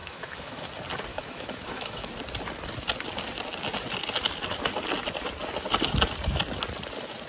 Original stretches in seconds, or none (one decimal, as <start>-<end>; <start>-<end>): 0.7-1.1; 2.1-7.3